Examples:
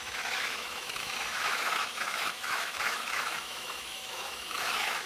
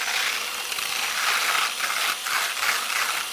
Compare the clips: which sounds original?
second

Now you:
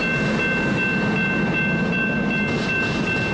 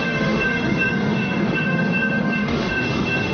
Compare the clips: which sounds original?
first